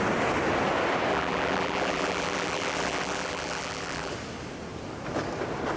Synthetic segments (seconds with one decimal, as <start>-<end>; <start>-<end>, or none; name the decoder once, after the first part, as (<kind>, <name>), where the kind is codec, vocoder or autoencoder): 1.1-4.1 (vocoder, BigVGAN v2)